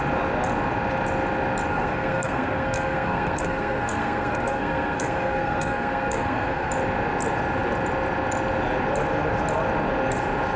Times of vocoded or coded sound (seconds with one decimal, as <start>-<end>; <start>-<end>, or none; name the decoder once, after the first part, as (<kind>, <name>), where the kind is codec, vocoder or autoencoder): 1.7-6.7 (codec, SNAC)